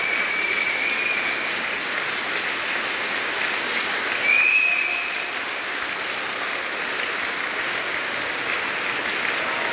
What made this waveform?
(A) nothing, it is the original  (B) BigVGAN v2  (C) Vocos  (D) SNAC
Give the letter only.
A